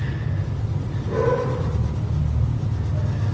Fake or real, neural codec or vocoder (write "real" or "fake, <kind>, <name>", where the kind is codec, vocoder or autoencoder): real